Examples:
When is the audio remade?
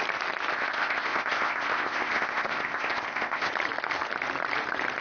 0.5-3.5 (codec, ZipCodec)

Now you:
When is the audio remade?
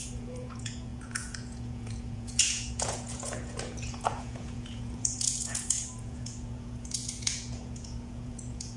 0.0-8.8 (vocoder, Vocos)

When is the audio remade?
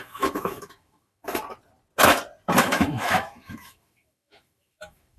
0.0-1.4 (autoencoder, DAC-VAE); 2.6-5.2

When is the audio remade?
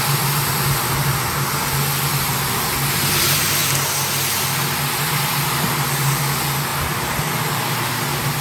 none